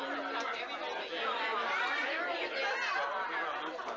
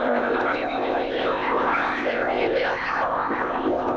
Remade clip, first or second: second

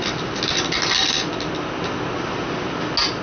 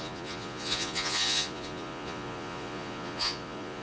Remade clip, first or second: second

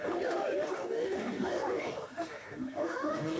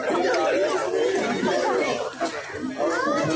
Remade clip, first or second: first